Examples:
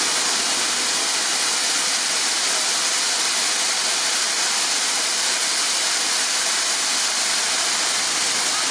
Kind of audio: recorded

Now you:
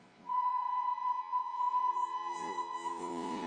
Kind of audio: remade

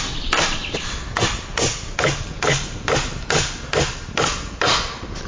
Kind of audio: recorded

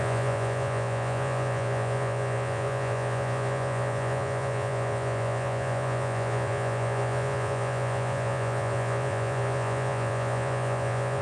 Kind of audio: remade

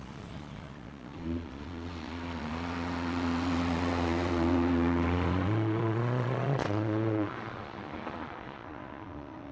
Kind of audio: remade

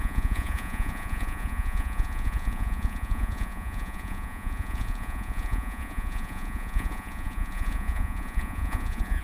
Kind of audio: remade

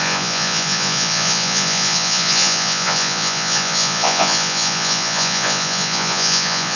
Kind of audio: remade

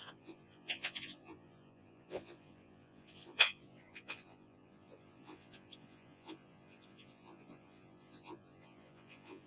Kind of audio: remade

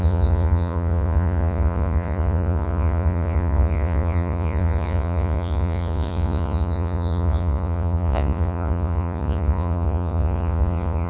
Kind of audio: remade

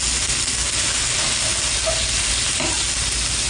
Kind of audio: recorded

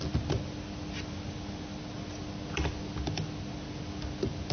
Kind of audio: recorded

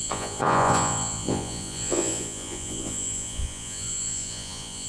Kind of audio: remade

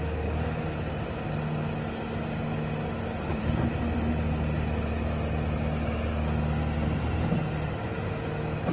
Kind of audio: recorded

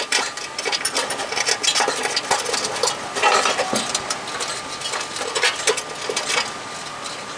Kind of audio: recorded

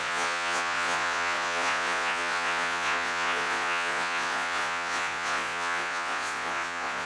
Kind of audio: remade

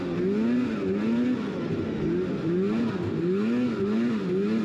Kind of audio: recorded